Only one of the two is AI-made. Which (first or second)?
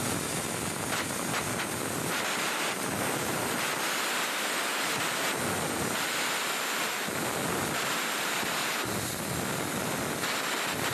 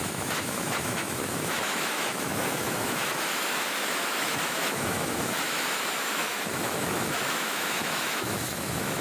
second